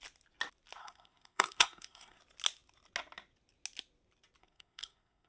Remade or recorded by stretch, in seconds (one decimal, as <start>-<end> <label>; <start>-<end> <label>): 0.0-0.8 recorded; 0.8-2.2 remade; 2.2-4.4 recorded; 4.4-5.3 remade